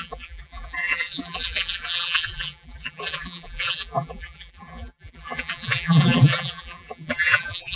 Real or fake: fake